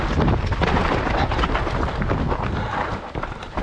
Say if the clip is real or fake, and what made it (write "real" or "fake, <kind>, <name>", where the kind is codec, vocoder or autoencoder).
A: real